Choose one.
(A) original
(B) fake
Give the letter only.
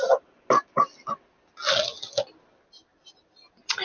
A